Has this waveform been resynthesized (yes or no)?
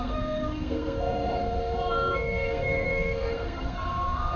yes